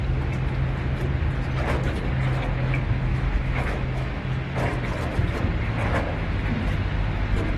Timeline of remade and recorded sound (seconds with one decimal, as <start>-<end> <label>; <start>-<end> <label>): 0.0-3.1 recorded; 3.1-4.2 remade; 4.2-7.6 recorded